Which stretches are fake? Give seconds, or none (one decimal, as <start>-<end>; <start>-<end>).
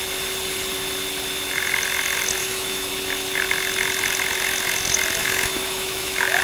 2.4-2.9; 5.2-6.4